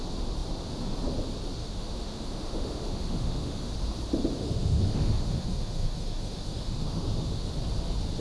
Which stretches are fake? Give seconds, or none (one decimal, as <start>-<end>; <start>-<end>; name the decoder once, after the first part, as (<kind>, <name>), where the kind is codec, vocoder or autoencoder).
1.6-3.7 (autoencoder, DAC-VAE); 4.4-7.5